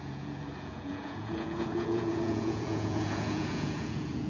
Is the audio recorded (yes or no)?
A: no